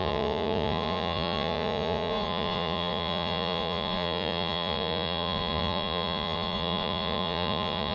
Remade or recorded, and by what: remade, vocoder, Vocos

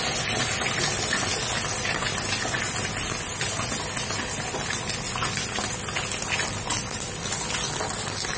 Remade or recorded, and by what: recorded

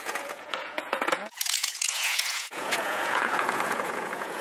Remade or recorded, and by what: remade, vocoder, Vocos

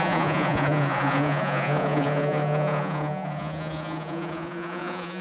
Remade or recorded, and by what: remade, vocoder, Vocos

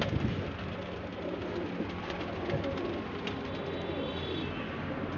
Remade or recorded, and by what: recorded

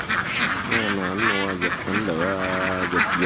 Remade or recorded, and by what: recorded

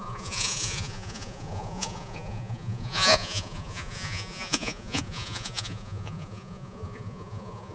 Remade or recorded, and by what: remade, vocoder, Vocos